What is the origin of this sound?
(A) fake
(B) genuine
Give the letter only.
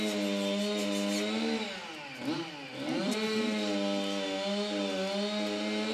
B